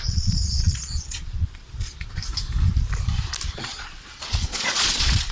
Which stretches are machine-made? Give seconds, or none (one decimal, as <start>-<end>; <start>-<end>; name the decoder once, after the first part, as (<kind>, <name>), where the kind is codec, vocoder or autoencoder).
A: 0.0-2.2 (vocoder, Vocos); 3.6-5.3